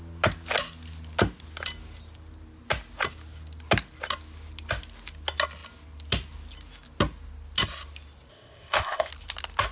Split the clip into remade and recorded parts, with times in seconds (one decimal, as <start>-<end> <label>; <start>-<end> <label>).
0.0-8.3 recorded; 8.3-9.1 remade; 9.1-9.7 recorded